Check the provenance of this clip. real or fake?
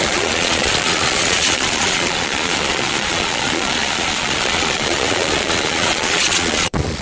fake